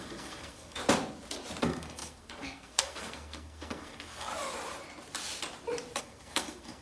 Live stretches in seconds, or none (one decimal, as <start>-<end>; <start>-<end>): 0.8-1.6; 4.3-6.0